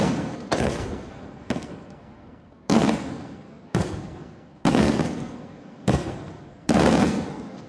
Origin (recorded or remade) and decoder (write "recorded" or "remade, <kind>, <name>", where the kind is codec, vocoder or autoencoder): remade, codec, SNAC